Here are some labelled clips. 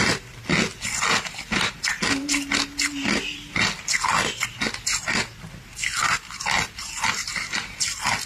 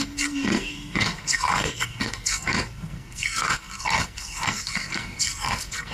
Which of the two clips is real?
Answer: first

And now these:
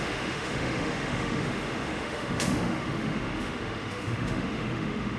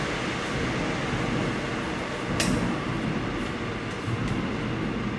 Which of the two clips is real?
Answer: second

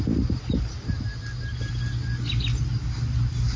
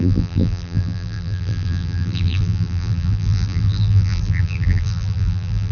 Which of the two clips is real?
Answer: first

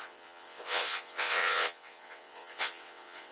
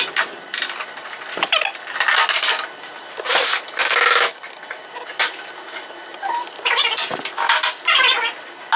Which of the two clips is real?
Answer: second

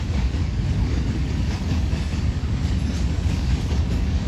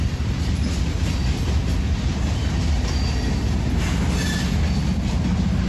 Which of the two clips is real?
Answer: second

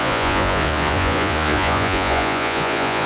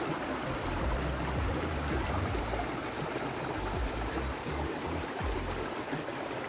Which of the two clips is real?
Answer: second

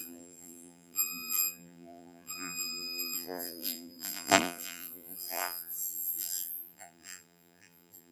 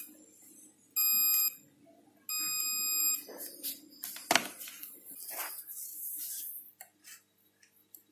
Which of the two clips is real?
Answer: second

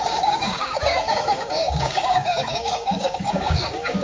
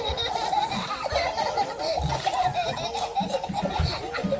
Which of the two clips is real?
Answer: second